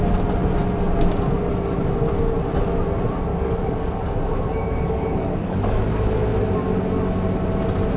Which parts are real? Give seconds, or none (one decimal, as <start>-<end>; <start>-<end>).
0.0-3.3; 6.3-8.0